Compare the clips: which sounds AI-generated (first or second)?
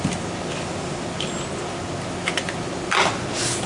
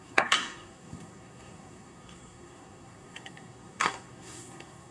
second